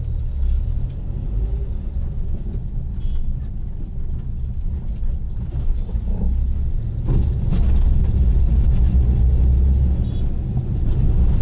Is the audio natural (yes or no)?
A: yes